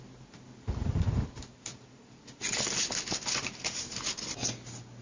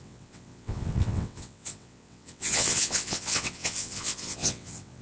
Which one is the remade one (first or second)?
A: second